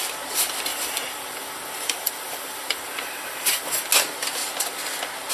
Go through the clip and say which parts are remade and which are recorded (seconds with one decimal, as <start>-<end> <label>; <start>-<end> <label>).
0.0-0.7 recorded; 0.7-3.9 remade; 3.9-5.3 recorded